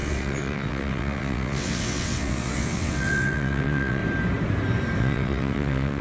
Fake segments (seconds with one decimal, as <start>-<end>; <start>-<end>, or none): 0.0-4.0; 5.0-6.0

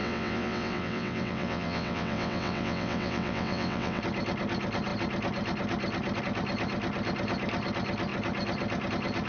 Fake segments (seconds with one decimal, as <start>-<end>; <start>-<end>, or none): 0.0-4.0

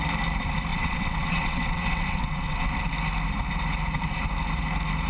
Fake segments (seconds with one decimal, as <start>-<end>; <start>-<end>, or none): 0.7-2.7

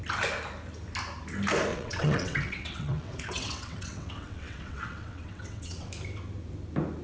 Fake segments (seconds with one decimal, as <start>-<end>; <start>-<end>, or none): 1.7-5.9

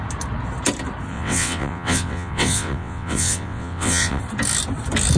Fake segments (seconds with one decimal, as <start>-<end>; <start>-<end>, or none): 1.1-4.2

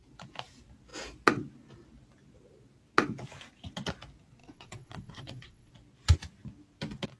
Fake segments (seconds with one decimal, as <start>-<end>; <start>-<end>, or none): 4.4-5.7

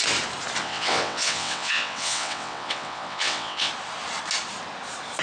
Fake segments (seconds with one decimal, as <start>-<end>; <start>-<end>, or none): 0.6-3.7